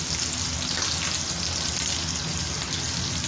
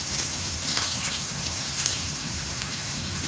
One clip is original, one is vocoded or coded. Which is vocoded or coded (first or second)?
second